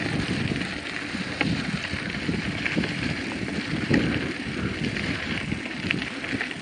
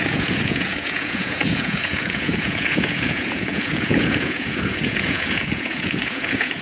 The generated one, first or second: second